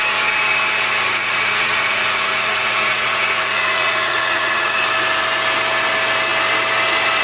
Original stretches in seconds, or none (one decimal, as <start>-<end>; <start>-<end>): 0.0-1.2; 4.8-7.2